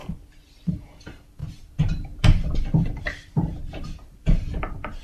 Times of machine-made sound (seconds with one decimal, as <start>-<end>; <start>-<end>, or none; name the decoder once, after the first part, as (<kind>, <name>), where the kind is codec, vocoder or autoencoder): 0.0-5.0 (vocoder, BigVGAN v2)